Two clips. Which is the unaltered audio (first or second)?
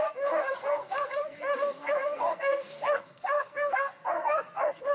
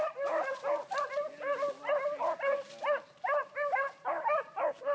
second